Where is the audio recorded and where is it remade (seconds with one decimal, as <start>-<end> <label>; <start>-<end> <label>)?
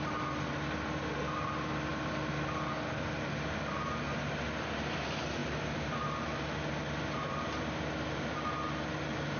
0.0-9.4 recorded